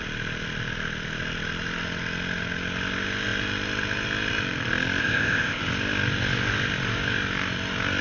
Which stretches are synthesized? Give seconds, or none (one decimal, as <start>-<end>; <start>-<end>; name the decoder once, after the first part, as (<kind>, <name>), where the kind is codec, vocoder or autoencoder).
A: 5.0-5.6 (codec, ZipCodec)